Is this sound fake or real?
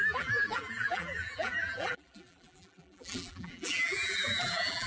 fake